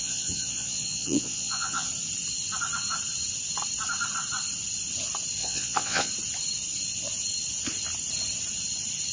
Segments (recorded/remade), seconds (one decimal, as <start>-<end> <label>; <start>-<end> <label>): 0.0-1.9 remade; 1.9-5.4 recorded; 5.4-6.1 remade; 6.1-9.1 recorded